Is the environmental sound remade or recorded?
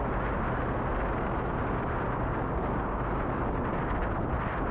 recorded